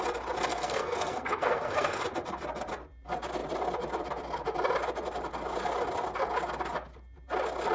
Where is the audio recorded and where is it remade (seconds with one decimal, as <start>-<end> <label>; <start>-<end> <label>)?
0.0-0.5 recorded; 0.5-2.0 remade; 2.0-7.7 recorded